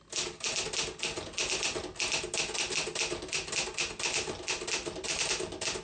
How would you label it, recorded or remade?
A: recorded